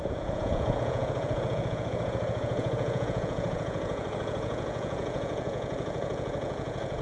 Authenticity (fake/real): fake